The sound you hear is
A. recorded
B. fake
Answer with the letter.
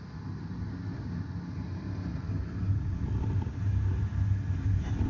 A